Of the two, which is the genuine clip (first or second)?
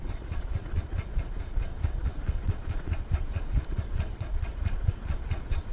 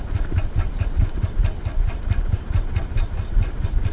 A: second